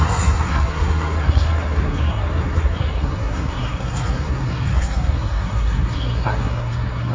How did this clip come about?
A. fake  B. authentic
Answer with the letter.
A